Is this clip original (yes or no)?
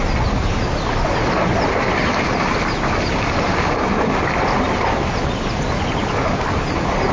yes